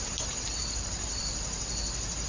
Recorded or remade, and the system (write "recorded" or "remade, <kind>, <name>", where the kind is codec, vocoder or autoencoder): recorded